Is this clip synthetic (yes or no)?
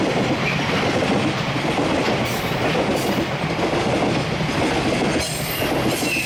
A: no